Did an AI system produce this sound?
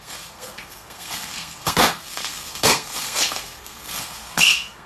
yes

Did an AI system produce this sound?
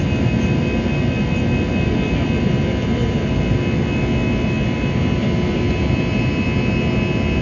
no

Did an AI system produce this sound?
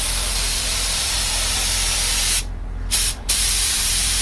yes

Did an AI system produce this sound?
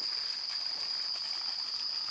no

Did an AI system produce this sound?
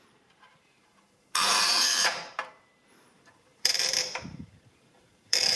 yes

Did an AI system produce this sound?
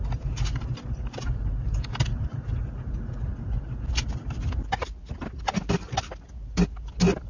no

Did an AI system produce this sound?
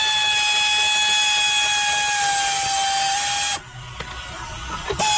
no